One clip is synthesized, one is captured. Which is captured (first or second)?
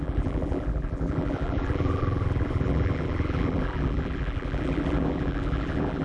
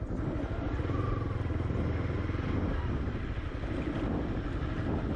second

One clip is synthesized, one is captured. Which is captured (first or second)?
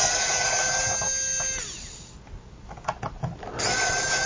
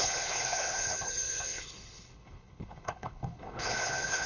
first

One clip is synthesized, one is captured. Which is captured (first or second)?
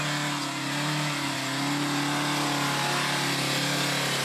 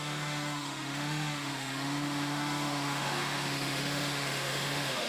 first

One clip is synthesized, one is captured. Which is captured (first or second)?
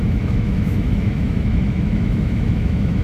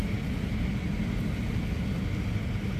second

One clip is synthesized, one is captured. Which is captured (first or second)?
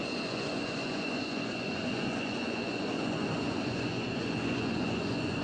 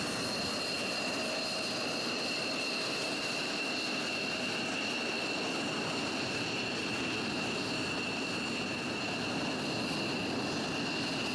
second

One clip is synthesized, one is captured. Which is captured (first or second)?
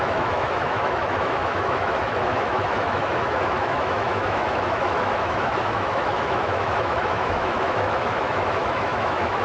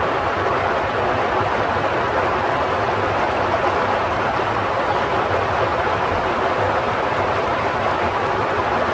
second